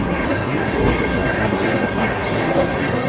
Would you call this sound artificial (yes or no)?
yes